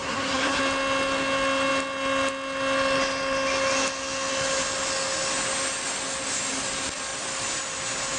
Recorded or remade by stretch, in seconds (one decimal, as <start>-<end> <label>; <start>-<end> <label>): 0.0-0.6 remade; 0.6-8.2 recorded